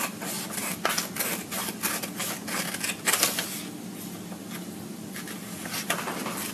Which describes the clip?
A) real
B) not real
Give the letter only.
A